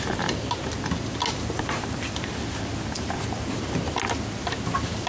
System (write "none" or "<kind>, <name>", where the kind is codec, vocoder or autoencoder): none